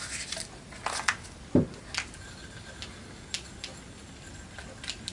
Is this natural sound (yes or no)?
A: yes